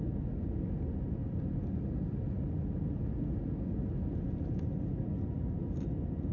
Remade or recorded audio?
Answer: recorded